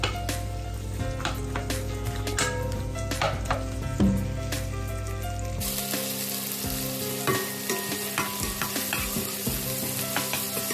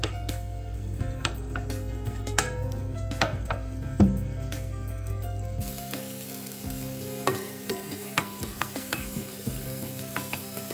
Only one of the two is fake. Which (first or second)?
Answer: second